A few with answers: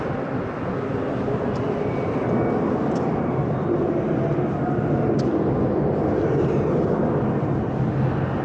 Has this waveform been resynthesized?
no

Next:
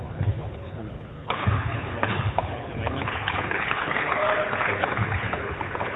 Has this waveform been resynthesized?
yes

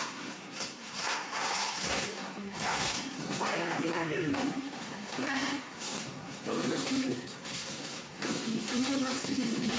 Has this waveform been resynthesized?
yes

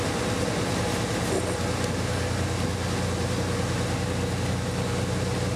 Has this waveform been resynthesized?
no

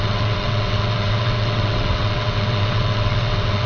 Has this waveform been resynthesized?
yes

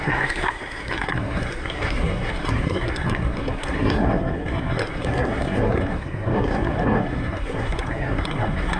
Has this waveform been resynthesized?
yes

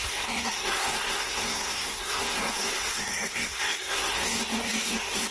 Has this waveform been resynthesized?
yes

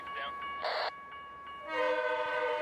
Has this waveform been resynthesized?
yes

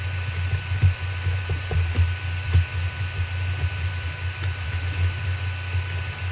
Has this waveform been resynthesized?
no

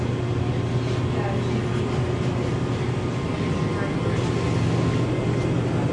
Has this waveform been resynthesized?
no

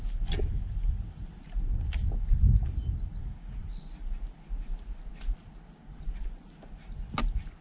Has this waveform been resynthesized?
no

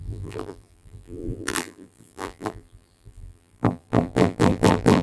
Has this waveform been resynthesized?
yes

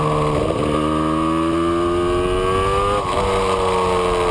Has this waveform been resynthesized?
no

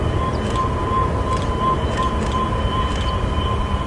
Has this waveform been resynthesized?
no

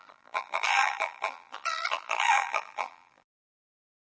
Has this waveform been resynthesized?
yes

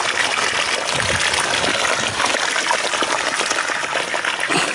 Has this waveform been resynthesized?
no